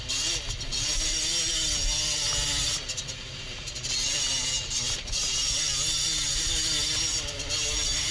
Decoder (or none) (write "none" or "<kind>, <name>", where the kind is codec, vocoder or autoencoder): none